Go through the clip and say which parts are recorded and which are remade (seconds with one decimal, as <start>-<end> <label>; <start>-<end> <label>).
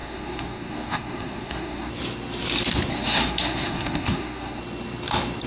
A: 0.0-1.9 remade; 1.9-2.9 recorded; 2.9-4.6 remade; 4.6-5.5 recorded